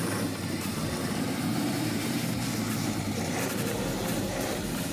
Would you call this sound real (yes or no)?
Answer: no